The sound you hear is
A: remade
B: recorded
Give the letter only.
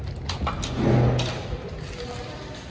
B